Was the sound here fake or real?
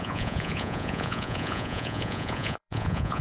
fake